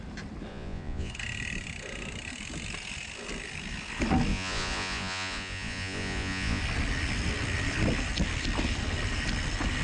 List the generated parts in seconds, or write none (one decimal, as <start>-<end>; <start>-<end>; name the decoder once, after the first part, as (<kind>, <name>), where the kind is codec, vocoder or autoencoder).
0.5-1.1 (vocoder, Vocos); 4.3-6.6